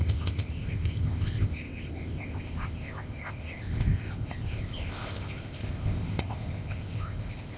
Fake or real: fake